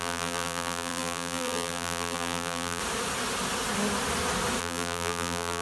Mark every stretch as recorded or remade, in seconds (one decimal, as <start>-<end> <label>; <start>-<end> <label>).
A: 0.0-2.8 remade; 2.8-4.6 recorded; 4.6-5.6 remade